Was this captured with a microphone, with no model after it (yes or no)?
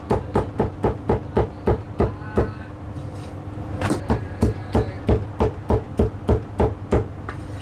yes